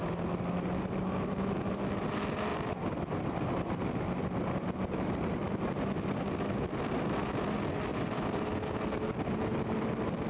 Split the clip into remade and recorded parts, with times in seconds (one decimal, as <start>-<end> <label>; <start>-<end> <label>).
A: 0.0-10.3 recorded